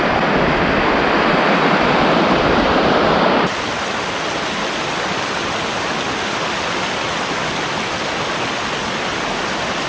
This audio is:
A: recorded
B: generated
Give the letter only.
A